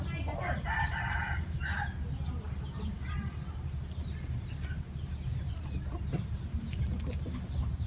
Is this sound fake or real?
real